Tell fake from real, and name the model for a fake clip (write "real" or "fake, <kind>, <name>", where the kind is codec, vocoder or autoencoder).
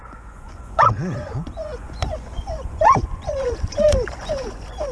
fake, vocoder, Vocos